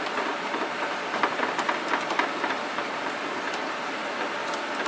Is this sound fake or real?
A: fake